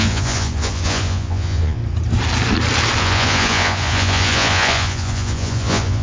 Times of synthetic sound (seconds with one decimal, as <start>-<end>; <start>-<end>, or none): 0.0-1.8; 3.0-6.0